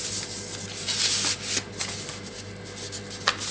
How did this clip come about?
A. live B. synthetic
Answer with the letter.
A